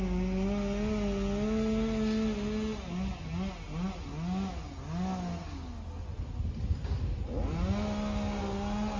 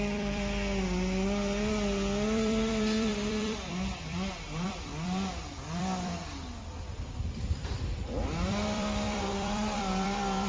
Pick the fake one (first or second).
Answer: second